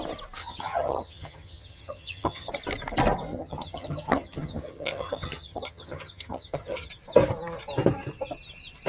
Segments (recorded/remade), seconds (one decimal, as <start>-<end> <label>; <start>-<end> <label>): 0.0-0.4 recorded; 0.4-2.5 remade; 2.5-3.3 recorded; 3.3-6.9 remade; 6.9-8.9 recorded